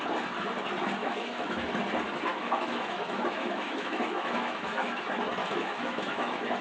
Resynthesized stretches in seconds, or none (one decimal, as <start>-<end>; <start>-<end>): 1.0-1.7; 2.3-5.0; 5.4-6.6